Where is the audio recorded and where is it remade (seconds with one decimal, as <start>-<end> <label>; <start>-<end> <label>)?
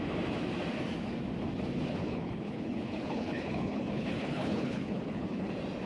0.0-2.0 recorded; 2.0-5.5 remade; 5.5-5.9 recorded